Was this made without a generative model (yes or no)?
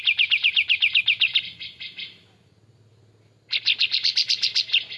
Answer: yes